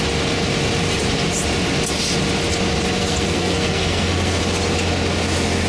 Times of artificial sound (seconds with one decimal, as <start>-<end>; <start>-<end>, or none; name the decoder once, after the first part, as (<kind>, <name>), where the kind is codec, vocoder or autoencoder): 3.0-4.4 (codec, SNAC)